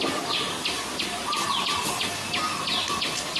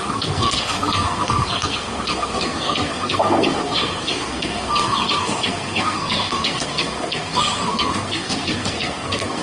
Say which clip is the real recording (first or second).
first